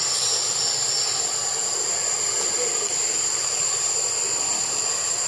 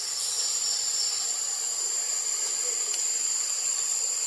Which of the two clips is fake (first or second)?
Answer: second